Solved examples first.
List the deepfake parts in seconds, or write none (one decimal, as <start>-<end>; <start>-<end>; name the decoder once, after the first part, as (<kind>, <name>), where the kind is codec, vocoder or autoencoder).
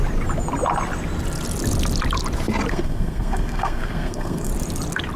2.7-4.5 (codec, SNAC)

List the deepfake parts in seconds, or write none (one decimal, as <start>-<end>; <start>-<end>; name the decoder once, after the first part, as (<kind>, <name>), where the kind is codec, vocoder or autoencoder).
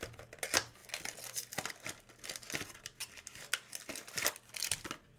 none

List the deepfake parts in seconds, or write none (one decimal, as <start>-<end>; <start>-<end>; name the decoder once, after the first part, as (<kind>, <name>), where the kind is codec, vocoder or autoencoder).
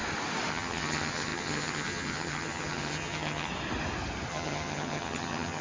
0.5-3.5 (vocoder, HiFi-GAN); 4.3-5.6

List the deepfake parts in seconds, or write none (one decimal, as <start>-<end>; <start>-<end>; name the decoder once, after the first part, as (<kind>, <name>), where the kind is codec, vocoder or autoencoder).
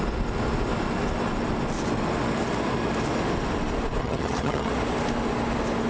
4.0-4.7 (vocoder, HiFi-GAN)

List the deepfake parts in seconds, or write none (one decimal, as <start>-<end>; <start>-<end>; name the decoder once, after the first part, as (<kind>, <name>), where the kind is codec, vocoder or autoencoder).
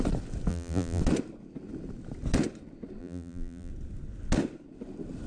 0.5-1.0 (vocoder, BigVGAN v2); 3.0-3.7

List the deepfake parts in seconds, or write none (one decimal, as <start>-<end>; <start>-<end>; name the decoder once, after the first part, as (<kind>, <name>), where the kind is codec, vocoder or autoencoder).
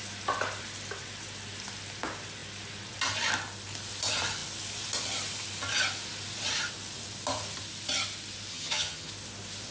8.5-9.1 (vocoder, HiFi-GAN)